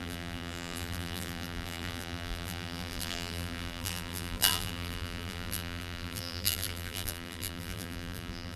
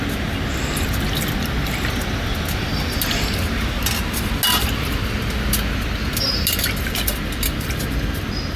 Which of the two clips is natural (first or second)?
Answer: second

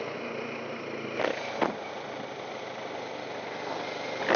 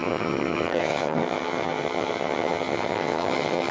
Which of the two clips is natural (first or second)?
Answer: first